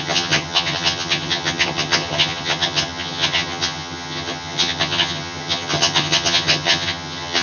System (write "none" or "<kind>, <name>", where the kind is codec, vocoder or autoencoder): vocoder, HiFi-GAN